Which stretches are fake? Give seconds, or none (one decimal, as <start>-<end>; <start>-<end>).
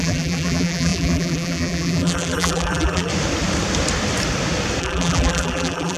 0.0-3.1; 4.8-6.0